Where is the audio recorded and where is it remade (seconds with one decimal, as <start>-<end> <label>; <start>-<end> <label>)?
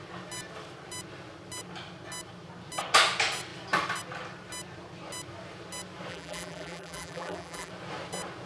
0.0-6.1 recorded; 6.1-7.7 remade; 7.7-8.5 recorded